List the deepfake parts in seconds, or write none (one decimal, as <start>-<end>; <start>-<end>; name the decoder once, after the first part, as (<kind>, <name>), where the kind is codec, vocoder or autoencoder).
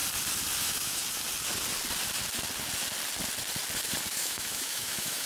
0.6-1.0 (autoencoder, DAC-VAE); 4.1-5.3